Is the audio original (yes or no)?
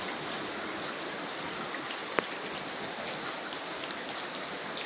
yes